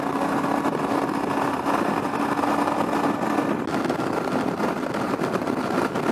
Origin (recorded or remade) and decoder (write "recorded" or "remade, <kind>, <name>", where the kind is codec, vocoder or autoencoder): recorded